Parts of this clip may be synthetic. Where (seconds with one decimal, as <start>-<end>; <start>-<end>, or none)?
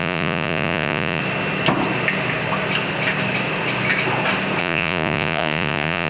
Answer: 0.0-1.2; 4.6-6.1